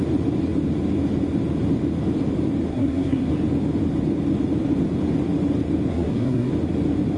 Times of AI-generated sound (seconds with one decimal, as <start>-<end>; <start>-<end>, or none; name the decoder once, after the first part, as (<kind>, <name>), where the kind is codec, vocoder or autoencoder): 2.7-3.3 (codec, SNAC); 5.9-6.5